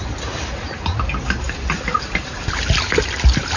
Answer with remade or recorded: recorded